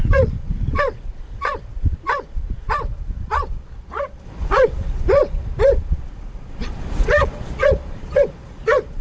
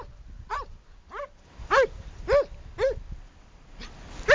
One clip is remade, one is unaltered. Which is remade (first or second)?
first